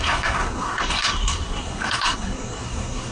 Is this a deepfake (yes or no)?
yes